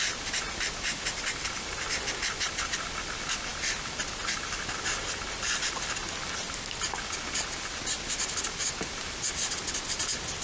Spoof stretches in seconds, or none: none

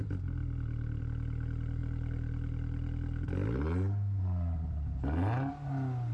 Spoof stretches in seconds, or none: 0.4-1.0 (vocoder, BigVGAN v2)

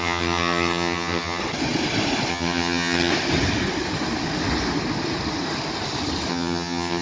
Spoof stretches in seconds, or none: 0.0-1.4 (vocoder, HiFi-GAN); 2.3-3.1; 6.3-7.0

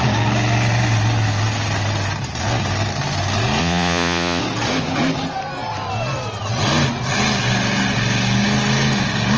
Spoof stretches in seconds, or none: 3.6-4.4 (vocoder, Vocos)

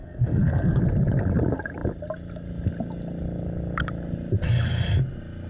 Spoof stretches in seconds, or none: 0.0-0.8 (codec, SNAC)

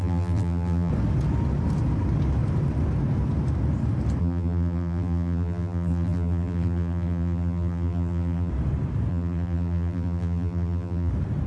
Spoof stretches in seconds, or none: 0.0-0.9 (vocoder, BigVGAN v2); 4.2-8.5; 9.1-11.1